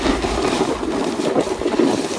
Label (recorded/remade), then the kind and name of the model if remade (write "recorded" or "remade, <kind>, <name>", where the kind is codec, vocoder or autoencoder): recorded